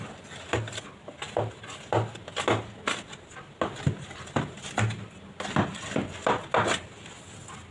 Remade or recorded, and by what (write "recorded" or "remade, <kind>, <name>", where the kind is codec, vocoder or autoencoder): recorded